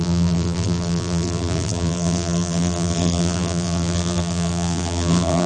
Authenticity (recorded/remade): remade